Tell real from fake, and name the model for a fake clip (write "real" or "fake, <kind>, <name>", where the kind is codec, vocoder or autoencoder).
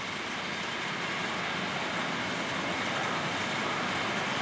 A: real